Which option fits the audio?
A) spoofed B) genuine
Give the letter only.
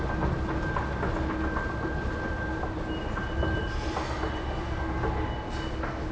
B